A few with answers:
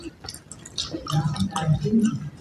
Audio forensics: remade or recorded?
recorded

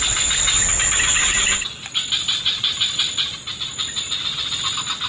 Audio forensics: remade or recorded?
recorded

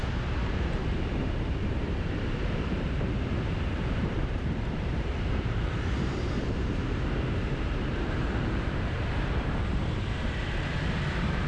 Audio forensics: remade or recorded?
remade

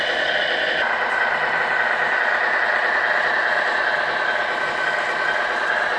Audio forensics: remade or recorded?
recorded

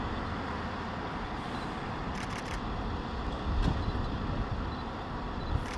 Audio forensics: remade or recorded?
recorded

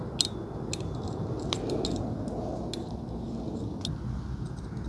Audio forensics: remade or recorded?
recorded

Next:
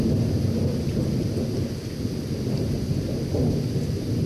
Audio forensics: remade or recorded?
recorded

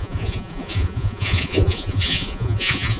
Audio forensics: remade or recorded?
remade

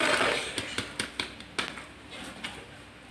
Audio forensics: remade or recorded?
recorded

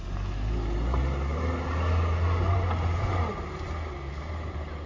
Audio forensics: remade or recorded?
recorded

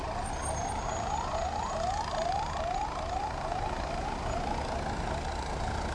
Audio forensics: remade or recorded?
recorded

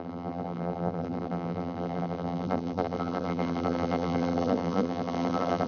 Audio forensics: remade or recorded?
remade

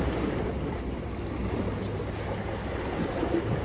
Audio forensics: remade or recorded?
recorded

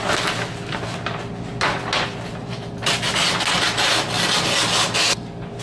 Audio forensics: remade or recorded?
recorded